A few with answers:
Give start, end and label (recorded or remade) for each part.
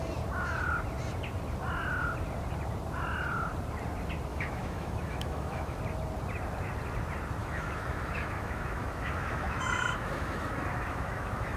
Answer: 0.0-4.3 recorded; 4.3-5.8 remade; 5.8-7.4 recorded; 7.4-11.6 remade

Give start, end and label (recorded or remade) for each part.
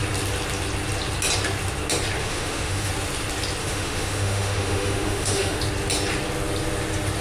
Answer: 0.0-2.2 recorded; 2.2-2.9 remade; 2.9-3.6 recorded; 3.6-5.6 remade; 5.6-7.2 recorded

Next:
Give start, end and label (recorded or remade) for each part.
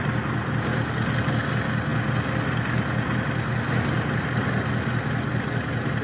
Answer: 0.0-6.0 recorded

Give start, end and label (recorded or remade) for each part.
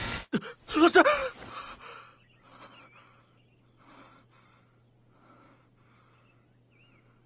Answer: 0.0-7.3 recorded